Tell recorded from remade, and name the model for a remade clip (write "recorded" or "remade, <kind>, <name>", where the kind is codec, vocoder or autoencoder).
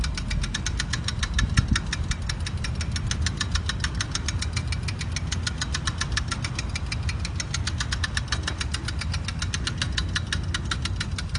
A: recorded